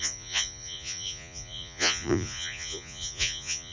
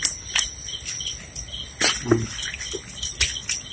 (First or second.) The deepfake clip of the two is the first